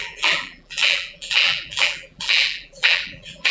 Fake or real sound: fake